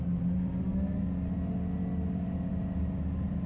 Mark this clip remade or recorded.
recorded